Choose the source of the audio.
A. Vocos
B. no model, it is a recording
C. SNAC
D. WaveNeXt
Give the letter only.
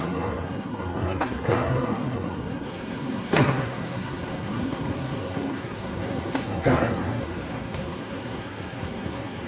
C